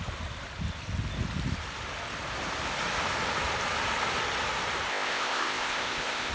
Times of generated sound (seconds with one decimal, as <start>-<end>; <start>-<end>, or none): 4.9-6.3